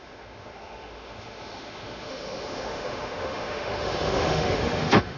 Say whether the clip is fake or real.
fake